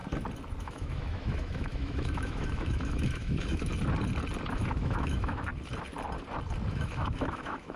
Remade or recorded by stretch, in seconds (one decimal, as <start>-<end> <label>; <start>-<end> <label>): 0.0-0.6 recorded; 0.6-3.7 remade; 3.7-4.5 recorded; 4.5-5.5 remade; 5.5-6.7 recorded; 6.7-7.8 remade